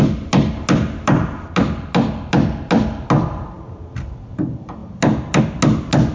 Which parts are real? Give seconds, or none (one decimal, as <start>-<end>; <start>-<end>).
0.0-6.1